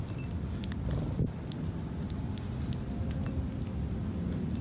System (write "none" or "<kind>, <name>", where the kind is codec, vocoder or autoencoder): none